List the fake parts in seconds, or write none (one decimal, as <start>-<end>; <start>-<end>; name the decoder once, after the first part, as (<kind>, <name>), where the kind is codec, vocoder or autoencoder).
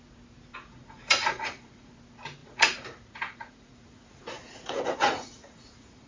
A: 0.5-1.9 (vocoder, Vocos); 2.4-6.1